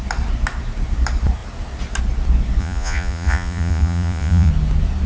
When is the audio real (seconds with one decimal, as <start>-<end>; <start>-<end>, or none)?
0.0-2.6; 4.5-5.1